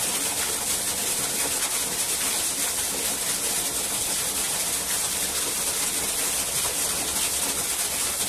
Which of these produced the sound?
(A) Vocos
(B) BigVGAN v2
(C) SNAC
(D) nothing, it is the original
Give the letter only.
D